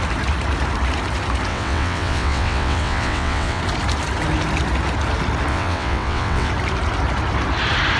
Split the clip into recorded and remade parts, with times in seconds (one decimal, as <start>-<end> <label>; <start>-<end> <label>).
0.0-1.5 recorded; 1.5-3.6 remade; 3.6-5.5 recorded; 5.5-6.5 remade; 6.5-8.0 recorded